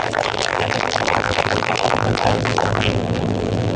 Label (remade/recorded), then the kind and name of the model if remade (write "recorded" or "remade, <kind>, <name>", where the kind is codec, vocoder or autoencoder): remade, vocoder, BigVGAN v2